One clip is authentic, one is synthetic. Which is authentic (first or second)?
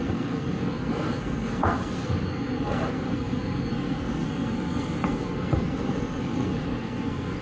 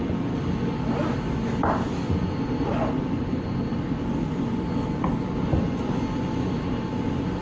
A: second